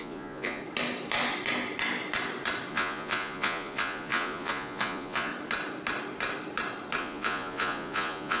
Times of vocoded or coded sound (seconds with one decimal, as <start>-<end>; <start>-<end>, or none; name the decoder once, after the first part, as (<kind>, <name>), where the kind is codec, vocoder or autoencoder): 0.0-0.6 (vocoder, Vocos); 2.7-5.3; 7.0-8.4